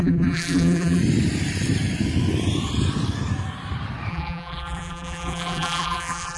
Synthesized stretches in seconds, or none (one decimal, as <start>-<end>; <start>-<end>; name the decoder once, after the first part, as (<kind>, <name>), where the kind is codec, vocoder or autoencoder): 0.0-1.0 (vocoder, BigVGAN v2); 4.1-6.4